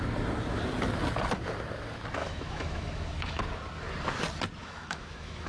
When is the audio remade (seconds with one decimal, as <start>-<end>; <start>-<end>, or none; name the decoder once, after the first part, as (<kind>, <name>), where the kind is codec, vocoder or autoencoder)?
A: 2.2-3.4 (autoencoder, DAC-VAE); 4.6-5.5